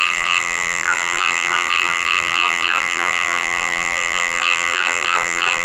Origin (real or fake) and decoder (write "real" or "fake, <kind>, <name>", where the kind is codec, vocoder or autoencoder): fake, vocoder, BigVGAN v2